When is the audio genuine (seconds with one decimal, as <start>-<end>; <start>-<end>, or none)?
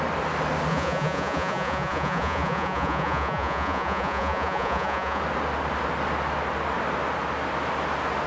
0.0-0.7; 5.2-8.3